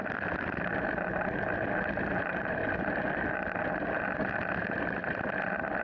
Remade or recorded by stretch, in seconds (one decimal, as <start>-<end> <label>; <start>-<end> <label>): 0.0-5.8 recorded